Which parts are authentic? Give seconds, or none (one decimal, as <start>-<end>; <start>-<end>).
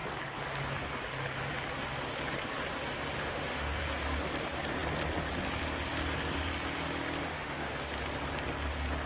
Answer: 0.0-3.2; 3.8-7.2; 7.7-9.1